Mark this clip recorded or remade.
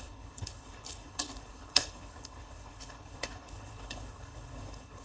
remade